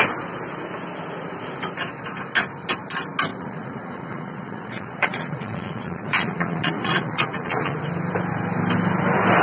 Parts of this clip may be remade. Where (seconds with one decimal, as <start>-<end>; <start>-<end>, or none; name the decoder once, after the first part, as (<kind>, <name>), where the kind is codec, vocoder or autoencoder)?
3.3-7.8 (vocoder, Vocos)